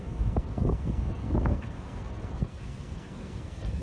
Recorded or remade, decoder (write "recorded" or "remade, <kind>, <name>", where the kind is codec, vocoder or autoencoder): remade, codec, SNAC